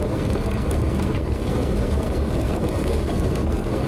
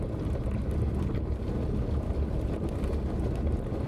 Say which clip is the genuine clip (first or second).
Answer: second